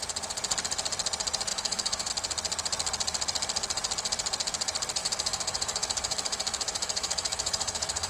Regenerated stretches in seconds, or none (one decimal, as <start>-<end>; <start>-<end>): 1.5-2.1; 5.0-8.1